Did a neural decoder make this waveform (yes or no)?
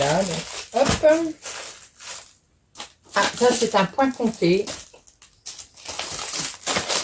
no